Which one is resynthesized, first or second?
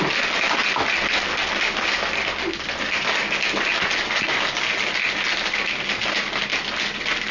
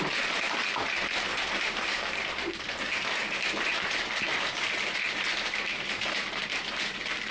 second